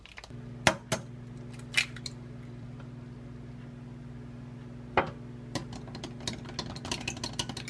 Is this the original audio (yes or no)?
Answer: yes